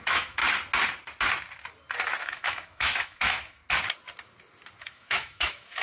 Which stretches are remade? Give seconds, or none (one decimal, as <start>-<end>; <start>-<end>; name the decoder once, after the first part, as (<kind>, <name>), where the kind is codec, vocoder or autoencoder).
0.0-0.4 (autoencoder, DAC-VAE); 2.2-3.6; 4.8-5.8